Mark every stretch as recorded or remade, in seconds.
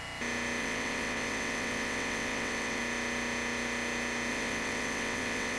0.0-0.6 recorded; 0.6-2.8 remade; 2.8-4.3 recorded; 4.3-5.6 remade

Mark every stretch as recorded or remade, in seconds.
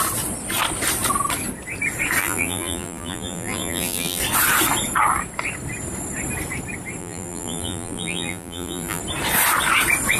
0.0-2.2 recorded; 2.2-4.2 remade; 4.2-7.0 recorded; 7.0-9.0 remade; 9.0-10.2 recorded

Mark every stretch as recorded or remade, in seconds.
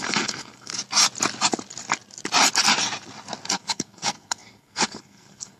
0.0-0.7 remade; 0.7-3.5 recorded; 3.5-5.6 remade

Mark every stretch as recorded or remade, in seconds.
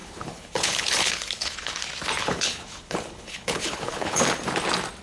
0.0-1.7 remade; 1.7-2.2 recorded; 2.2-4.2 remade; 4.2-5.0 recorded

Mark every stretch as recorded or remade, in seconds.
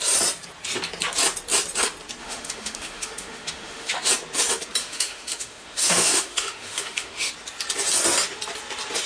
0.0-2.2 recorded; 2.2-4.1 remade; 4.1-4.8 recorded; 4.8-7.3 remade; 7.3-9.1 recorded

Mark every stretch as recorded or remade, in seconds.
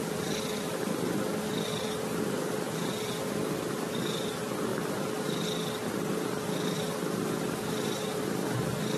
0.0-9.0 recorded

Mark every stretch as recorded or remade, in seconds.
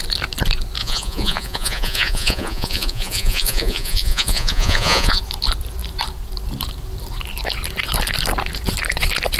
0.0-0.8 recorded; 0.8-5.2 remade; 5.2-9.4 recorded